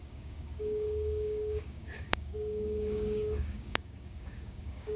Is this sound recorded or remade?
remade